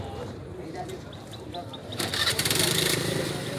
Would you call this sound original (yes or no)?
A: no